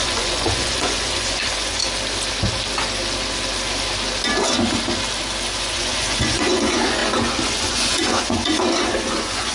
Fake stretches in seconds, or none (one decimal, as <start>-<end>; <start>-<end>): 0.0-1.8; 5.6-9.5

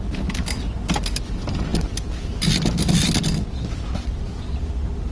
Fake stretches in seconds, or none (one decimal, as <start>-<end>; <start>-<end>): none

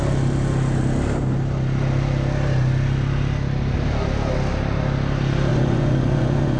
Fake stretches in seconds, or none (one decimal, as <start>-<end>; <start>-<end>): 5.5-6.6

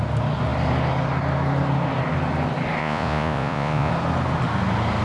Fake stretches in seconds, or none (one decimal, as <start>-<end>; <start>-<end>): 2.8-3.9

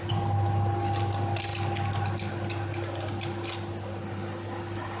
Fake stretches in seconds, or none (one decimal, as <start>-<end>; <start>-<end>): none

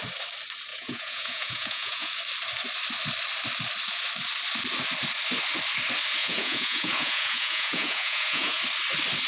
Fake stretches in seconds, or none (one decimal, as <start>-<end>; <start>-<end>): 0.7-2.1; 6.2-8.6

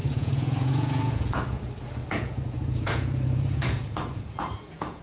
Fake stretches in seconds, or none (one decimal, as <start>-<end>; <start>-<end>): 0.0-1.6; 2.0-5.0